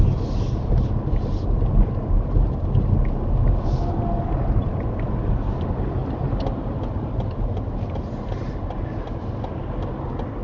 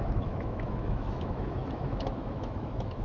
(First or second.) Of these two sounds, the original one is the first